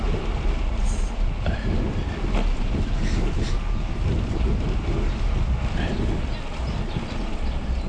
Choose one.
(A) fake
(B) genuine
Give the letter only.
B